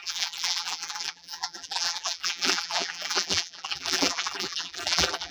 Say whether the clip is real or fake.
fake